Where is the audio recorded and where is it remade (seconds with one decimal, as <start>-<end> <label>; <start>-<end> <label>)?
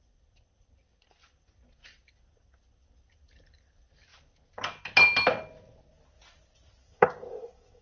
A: 0.0-6.8 recorded; 6.8-7.8 remade